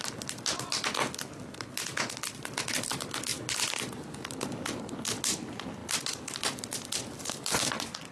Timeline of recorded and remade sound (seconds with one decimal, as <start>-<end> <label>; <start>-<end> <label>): 0.0-8.1 recorded